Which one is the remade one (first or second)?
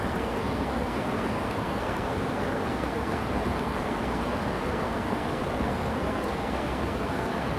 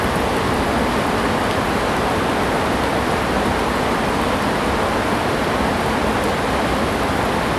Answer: first